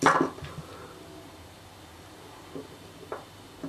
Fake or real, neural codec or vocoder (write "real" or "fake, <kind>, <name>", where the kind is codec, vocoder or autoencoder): real